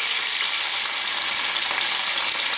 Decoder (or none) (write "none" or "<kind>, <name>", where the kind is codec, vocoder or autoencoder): none